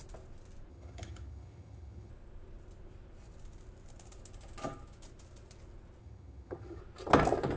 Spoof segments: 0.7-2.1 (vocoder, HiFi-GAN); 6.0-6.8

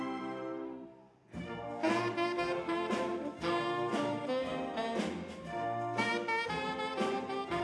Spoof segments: 0.0-4.5 (vocoder, BigVGAN v2); 6.8-7.6

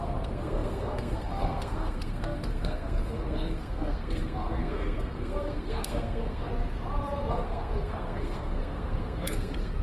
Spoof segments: 0.0-6.5 (codec, SNAC); 7.3-9.8

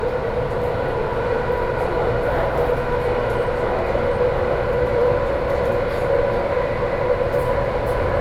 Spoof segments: none